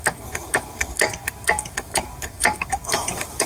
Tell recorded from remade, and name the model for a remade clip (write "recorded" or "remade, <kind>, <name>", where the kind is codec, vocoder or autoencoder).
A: remade, codec, DAC